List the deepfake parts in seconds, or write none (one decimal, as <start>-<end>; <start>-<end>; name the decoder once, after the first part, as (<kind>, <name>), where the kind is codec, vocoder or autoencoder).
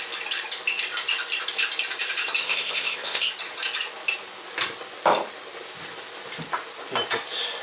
2.4-3.3 (codec, ZipCodec)